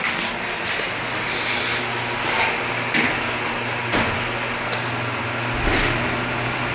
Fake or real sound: real